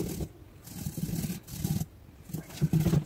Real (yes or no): yes